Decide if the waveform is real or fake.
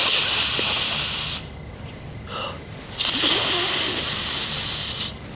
real